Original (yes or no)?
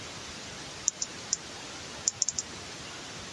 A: yes